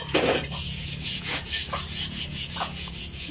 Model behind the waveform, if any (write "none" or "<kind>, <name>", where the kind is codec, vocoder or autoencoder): vocoder, Vocos